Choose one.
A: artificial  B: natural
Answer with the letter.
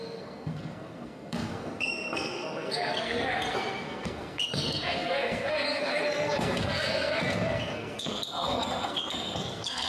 A